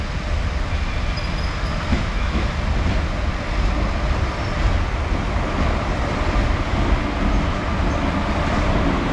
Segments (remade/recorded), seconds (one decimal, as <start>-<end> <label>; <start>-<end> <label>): 0.0-1.9 recorded; 1.9-2.5 remade; 2.5-9.1 recorded

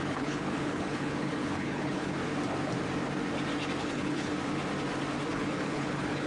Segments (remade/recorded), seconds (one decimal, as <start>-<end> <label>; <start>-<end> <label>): 0.0-2.2 remade; 2.2-3.8 recorded; 3.8-4.3 remade; 4.3-5.3 recorded; 5.3-6.3 remade

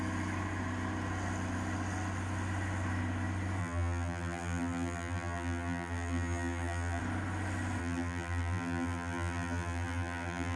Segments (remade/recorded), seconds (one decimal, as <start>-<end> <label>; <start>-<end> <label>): 0.0-3.6 recorded; 3.6-7.0 remade; 7.0-7.8 recorded; 7.8-10.6 remade

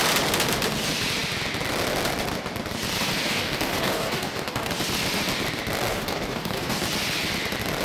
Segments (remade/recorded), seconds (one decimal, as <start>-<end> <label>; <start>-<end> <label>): 0.0-3.3 recorded; 3.3-4.7 remade; 4.7-5.9 recorded; 5.9-6.8 remade; 6.8-7.8 recorded

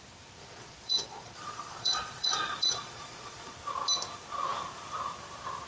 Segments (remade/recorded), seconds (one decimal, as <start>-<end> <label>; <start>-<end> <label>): 0.0-0.4 recorded; 0.4-3.5 remade; 3.5-5.7 recorded

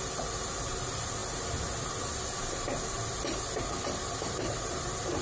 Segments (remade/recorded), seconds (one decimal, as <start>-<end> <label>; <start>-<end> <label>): 0.0-5.2 recorded